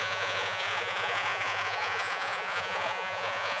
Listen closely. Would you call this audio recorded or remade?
remade